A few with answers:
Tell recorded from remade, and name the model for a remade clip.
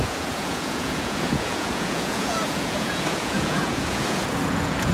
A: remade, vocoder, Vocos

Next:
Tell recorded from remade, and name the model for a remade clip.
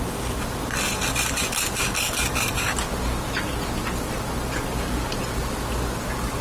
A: recorded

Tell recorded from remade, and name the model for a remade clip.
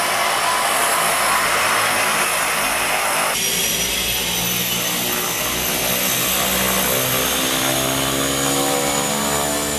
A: recorded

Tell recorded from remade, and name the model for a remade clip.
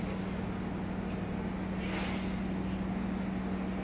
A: recorded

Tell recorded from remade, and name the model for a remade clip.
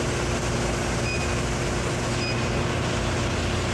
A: recorded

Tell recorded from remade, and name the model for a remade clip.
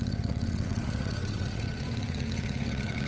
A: remade, vocoder, WaveNeXt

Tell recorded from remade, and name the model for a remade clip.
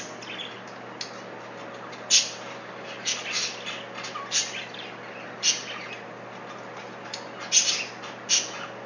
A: recorded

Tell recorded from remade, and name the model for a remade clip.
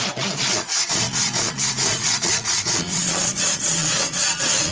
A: remade, vocoder, Vocos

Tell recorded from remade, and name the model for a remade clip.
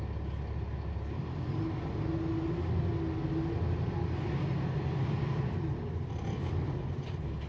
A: recorded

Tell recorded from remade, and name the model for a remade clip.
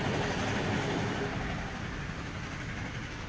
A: recorded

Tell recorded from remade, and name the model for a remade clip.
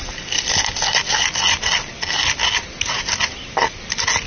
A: recorded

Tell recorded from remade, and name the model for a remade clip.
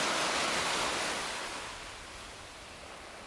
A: recorded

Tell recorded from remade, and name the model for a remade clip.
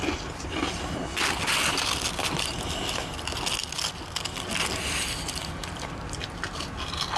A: recorded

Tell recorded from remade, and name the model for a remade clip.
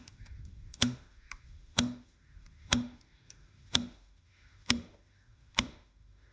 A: remade, autoencoder, DAC-VAE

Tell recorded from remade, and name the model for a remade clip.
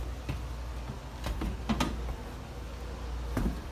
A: recorded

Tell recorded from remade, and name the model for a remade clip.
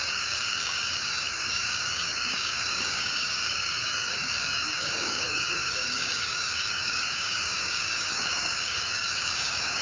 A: remade, codec, DAC